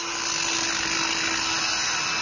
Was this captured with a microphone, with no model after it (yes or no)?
yes